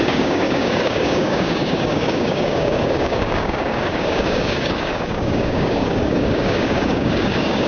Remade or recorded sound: remade